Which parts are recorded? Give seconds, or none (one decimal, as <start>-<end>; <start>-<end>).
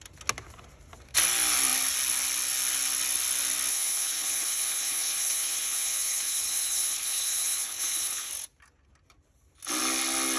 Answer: 0.0-3.7; 8.3-10.4